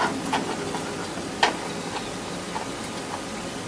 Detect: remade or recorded recorded